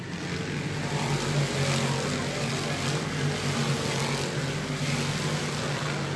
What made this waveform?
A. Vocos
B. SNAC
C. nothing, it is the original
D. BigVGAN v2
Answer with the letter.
C